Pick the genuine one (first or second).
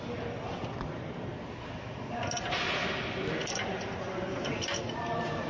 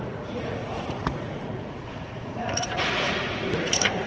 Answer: first